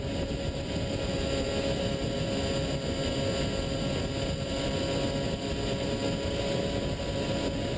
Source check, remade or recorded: recorded